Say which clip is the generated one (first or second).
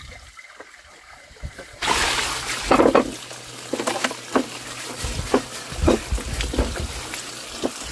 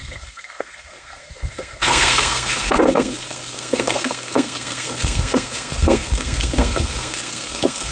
second